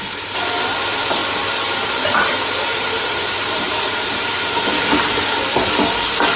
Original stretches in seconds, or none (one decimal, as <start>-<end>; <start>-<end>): 0.0-2.7; 4.3-6.4